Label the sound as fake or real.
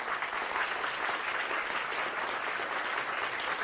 real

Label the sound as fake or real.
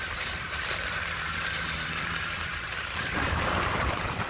fake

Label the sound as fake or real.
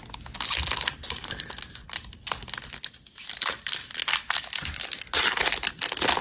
real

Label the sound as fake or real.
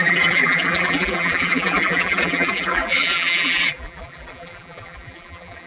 fake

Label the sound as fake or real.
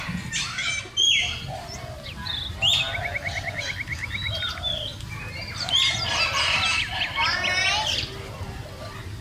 real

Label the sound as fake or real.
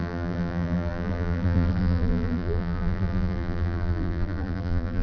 fake